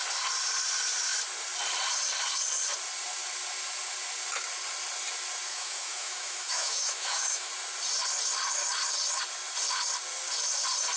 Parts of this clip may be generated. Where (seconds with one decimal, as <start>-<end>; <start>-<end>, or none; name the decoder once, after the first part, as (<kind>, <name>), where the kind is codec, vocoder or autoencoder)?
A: 5.5-7.5 (autoencoder, DAC-VAE)

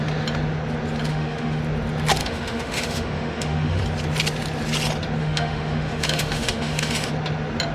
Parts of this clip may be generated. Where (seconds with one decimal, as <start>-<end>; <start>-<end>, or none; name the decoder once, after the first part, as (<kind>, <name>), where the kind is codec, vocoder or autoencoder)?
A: 1.1-1.6 (autoencoder, DAC-VAE); 2.2-3.8; 5.2-7.1

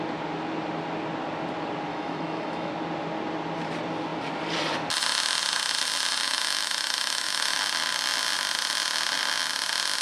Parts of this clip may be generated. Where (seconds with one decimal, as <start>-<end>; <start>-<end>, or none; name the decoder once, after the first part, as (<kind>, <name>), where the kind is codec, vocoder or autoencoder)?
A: 1.9-2.7 (autoencoder, DAC-VAE); 6.2-7.6

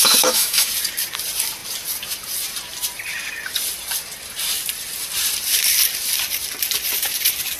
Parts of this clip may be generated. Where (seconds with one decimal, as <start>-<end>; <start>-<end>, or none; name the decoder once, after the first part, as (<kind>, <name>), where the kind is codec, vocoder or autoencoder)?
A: 0.0-0.7 (autoencoder, DAC-VAE)

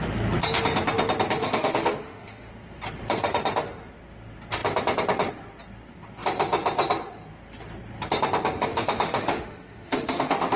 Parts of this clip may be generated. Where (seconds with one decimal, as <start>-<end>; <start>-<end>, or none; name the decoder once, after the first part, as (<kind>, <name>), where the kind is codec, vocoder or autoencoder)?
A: 1.4-2.5 (autoencoder, DAC-VAE); 8.7-10.6